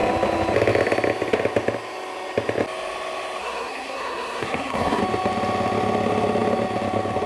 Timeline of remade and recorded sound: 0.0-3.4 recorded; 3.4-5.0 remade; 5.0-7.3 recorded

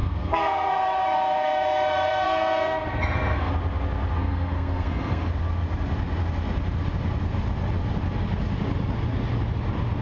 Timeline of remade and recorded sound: 0.0-3.5 remade; 3.5-4.2 recorded; 4.2-5.3 remade; 5.3-10.0 recorded

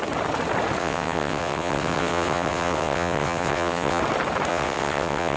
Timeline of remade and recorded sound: 0.0-0.8 recorded; 0.8-4.0 remade; 4.0-4.5 recorded; 4.5-5.4 remade

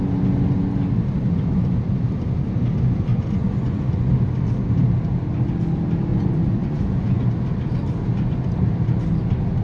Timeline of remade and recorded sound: 0.0-3.1 recorded; 3.1-4.1 remade; 4.1-6.1 recorded; 6.1-7.3 remade; 7.3-9.6 recorded